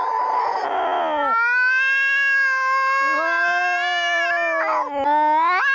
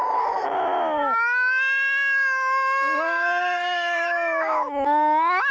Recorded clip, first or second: first